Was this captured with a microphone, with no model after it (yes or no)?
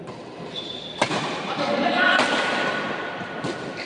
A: yes